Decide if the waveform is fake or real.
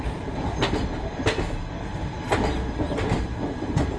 real